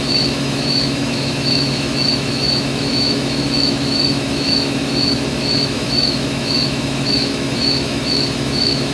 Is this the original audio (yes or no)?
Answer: no